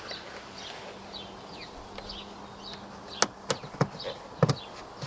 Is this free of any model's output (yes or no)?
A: yes